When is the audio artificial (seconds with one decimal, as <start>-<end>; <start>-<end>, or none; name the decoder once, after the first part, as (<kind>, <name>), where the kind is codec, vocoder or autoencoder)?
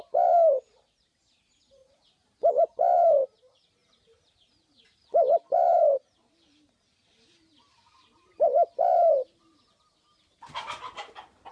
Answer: 3.8-8.3 (vocoder, BigVGAN v2); 10.2-11.5